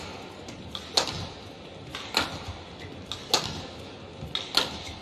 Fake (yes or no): no